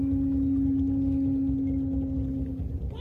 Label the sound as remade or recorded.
recorded